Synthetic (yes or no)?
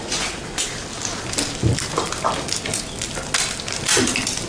no